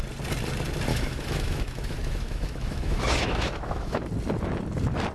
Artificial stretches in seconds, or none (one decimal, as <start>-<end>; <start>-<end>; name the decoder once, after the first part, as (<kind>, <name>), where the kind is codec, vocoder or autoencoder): 0.9-4.0 (autoencoder, DAC-VAE)